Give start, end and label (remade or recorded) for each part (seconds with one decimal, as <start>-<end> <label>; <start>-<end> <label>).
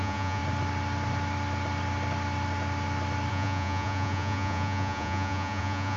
0.0-0.4 remade; 0.4-3.3 recorded; 3.3-6.0 remade